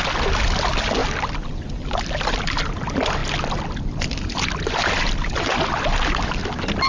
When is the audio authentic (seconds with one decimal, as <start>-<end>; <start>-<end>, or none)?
0.0-6.9